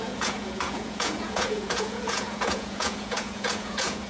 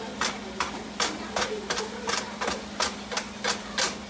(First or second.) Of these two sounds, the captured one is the second